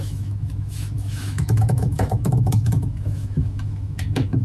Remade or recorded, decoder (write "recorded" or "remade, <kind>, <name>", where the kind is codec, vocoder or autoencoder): remade, autoencoder, DAC-VAE